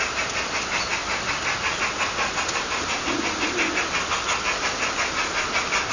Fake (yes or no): no